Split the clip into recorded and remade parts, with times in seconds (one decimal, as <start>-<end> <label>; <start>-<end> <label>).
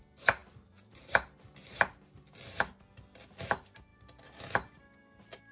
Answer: 0.0-5.5 recorded